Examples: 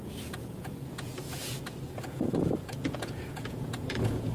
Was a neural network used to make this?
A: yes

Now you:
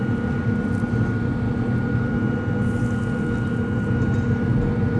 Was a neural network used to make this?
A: no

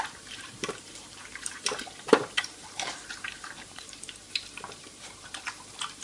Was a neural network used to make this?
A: yes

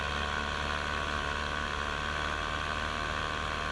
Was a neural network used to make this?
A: no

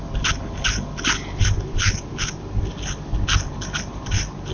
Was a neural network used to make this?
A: no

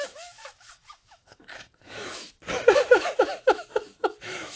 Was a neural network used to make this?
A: yes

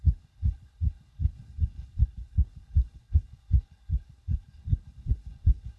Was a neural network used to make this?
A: yes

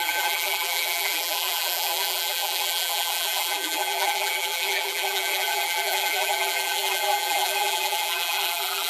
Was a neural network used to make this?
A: yes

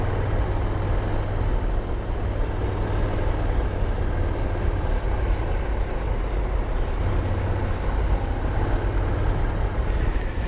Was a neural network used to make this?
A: no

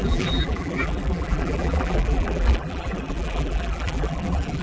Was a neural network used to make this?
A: yes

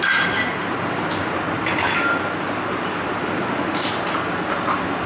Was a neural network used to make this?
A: no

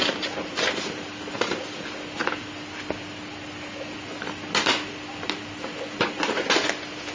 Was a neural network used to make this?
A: no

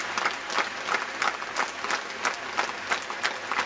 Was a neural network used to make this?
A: no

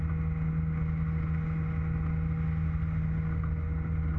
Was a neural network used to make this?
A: no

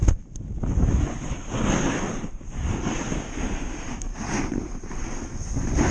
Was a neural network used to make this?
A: no